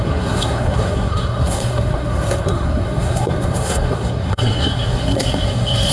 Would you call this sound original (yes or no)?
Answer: no